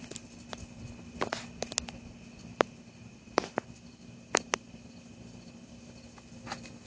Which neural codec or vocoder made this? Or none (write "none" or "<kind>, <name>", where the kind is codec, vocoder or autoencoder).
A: none